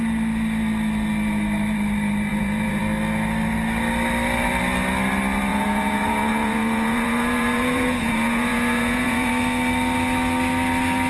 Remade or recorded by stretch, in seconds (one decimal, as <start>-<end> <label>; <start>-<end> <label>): 0.0-2.3 recorded; 2.3-2.8 remade; 2.8-5.5 recorded; 5.5-9.3 remade; 9.3-11.1 recorded